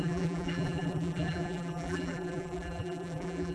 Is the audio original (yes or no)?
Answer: no